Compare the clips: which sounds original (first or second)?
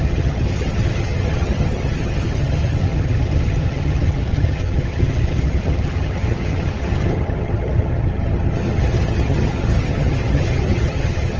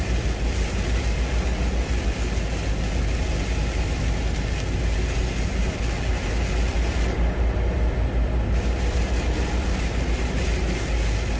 second